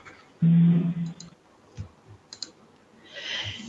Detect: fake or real real